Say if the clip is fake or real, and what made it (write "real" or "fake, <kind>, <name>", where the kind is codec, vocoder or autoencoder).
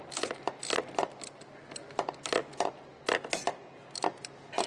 real